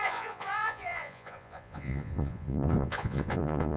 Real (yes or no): no